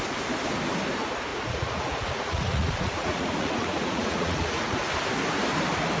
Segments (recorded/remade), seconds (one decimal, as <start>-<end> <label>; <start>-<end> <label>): 0.0-1.3 recorded; 1.3-4.9 remade; 4.9-6.0 recorded